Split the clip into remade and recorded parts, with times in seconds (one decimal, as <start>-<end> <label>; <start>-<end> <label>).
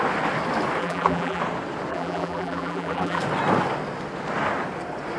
0.0-0.8 recorded; 0.8-1.4 remade; 1.4-1.9 recorded; 1.9-3.2 remade; 3.2-5.2 recorded